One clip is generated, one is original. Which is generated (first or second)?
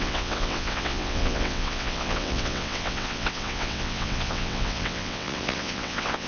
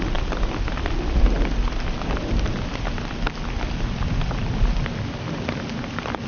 first